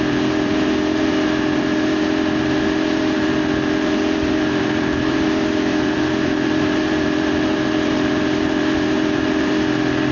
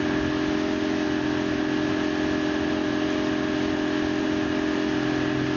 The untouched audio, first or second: second